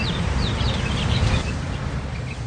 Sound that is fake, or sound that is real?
fake